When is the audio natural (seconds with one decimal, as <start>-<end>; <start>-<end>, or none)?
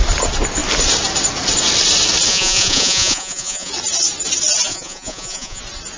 0.0-2.3; 3.7-4.7; 5.6-6.0